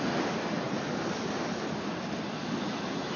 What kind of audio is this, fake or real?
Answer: real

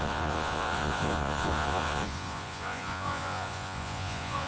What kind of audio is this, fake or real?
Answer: fake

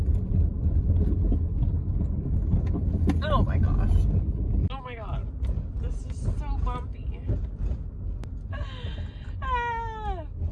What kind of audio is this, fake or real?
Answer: real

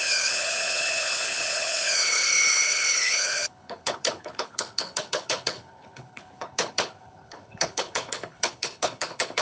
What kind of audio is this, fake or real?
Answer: fake